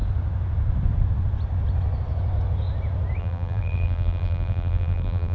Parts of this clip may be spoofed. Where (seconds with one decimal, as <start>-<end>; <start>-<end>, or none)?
3.2-5.3